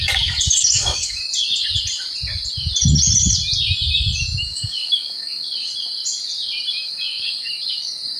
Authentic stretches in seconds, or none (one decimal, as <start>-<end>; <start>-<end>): 1.2-4.4; 5.7-6.7